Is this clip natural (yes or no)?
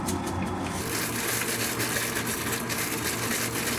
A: yes